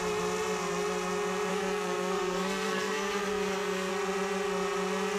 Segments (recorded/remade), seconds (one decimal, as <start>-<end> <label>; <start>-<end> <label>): 0.0-1.5 recorded; 1.5-3.9 remade; 3.9-5.2 recorded